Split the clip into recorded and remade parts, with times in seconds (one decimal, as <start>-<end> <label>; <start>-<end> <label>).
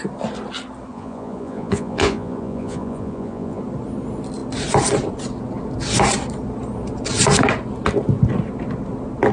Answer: 0.0-0.9 recorded; 0.9-3.6 remade; 3.6-9.3 recorded